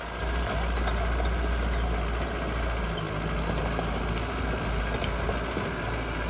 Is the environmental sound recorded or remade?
recorded